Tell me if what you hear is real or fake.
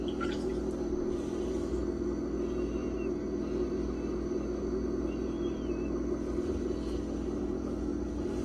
real